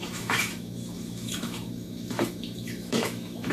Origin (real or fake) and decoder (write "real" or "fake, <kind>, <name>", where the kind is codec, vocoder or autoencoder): fake, autoencoder, DAC-VAE